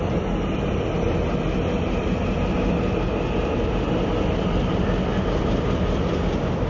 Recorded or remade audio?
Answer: recorded